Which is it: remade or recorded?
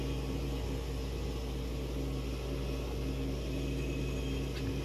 recorded